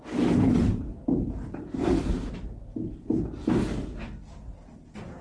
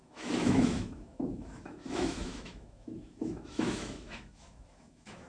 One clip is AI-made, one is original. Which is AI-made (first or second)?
second